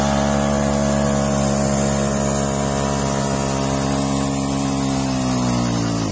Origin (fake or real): real